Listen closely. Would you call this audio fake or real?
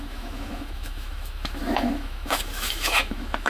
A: fake